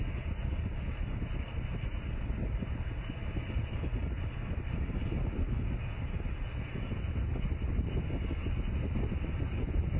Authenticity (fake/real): real